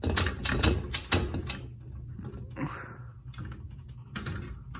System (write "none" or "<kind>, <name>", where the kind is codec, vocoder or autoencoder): none